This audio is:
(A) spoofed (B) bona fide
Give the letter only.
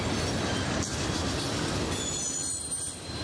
B